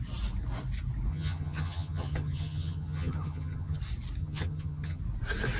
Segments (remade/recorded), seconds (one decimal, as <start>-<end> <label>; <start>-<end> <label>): 0.0-1.1 recorded; 1.1-3.8 remade; 3.8-4.2 recorded; 4.2-5.0 remade; 5.0-5.6 recorded